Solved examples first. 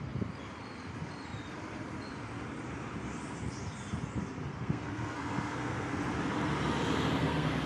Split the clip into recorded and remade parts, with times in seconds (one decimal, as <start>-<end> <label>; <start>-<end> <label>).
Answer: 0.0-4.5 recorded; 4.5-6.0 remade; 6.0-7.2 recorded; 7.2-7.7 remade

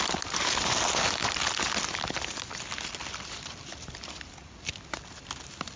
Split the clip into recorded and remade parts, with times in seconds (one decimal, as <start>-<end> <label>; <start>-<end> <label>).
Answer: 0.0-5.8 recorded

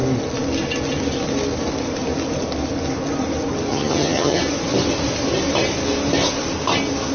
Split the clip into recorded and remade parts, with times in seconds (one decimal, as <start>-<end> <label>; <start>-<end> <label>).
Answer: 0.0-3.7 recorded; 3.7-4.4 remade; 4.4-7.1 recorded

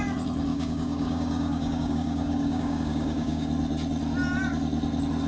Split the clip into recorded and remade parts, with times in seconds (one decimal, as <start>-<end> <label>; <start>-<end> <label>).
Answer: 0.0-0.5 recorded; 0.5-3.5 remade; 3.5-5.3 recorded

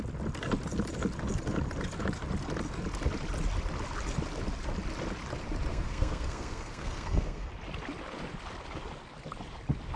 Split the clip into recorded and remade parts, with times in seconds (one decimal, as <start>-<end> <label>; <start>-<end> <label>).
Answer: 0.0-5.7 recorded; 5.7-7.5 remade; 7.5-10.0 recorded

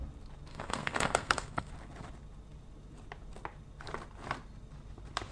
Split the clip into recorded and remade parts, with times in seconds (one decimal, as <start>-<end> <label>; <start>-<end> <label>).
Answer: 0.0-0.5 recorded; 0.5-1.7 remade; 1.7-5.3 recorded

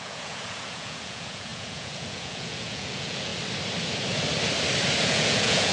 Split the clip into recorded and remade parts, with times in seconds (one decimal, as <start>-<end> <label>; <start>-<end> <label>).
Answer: 0.0-3.3 remade; 3.3-5.0 recorded; 5.0-5.7 remade